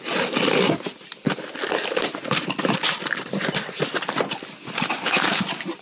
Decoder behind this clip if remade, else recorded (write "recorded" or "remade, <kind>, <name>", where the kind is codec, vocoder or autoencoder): recorded